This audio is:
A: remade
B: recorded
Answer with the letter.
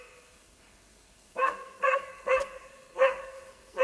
A